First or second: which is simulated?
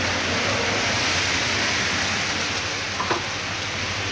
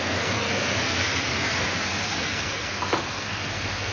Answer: second